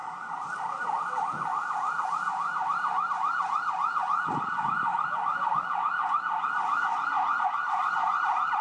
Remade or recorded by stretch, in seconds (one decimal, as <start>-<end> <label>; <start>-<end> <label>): 0.0-3.1 remade; 3.1-8.6 recorded